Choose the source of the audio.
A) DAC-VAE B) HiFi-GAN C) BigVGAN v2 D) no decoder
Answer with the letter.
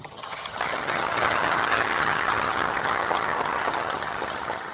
B